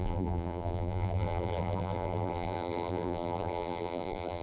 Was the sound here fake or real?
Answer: fake